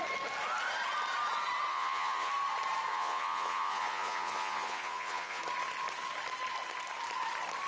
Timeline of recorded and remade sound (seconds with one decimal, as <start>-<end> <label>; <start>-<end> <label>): 0.0-1.7 recorded; 1.7-2.3 remade; 2.3-2.9 recorded; 2.9-5.4 remade; 5.4-7.7 recorded